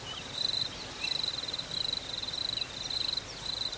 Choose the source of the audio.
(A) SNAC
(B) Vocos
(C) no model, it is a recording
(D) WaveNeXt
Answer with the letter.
C